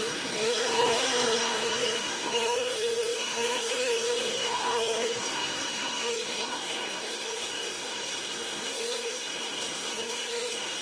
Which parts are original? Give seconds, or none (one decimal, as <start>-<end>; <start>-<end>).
none